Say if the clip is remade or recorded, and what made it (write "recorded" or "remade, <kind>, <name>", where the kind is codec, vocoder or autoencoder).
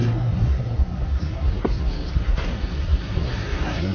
remade, codec, SNAC